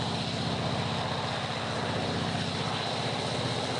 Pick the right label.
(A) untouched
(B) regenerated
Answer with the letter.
A